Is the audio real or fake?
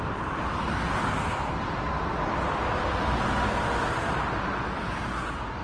real